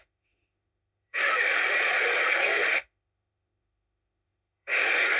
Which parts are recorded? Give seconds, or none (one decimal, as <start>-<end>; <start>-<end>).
1.6-2.2

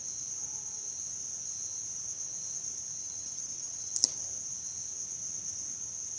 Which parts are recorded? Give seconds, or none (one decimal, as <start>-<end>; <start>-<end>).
0.0-3.0; 3.9-6.2

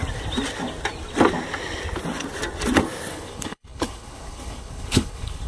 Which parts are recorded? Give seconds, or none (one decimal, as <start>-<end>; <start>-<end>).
0.0-3.1

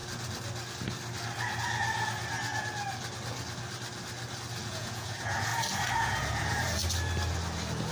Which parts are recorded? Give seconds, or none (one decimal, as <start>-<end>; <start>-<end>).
0.0-4.7; 5.5-6.0; 6.8-7.9

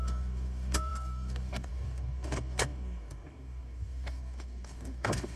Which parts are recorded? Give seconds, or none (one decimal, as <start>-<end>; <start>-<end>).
none